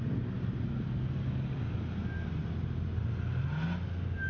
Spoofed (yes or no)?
no